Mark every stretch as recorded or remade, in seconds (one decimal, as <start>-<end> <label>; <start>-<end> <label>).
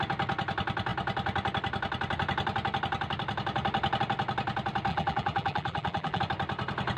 0.0-4.9 recorded; 4.9-6.2 remade; 6.2-7.0 recorded